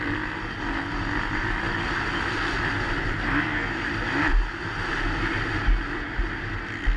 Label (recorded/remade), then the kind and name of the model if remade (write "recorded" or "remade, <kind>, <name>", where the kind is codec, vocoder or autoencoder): recorded